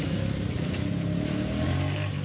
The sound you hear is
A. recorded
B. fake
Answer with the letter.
A